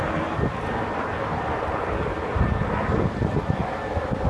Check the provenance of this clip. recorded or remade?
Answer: recorded